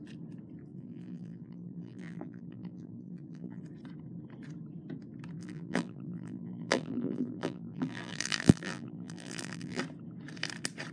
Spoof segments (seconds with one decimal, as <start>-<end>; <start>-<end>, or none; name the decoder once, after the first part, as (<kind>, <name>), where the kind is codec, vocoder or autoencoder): 0.7-3.6 (vocoder, BigVGAN v2); 5.4-9.8